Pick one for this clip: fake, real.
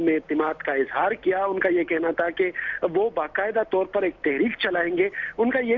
real